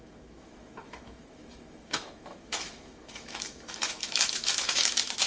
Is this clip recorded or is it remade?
remade